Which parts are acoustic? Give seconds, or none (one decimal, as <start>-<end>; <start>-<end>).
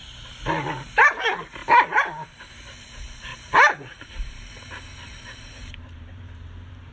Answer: 0.0-1.6; 2.8-3.3